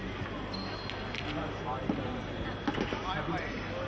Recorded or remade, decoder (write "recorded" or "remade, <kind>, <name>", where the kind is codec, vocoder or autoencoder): recorded